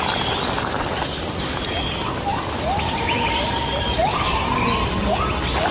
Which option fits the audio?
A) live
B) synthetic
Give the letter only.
A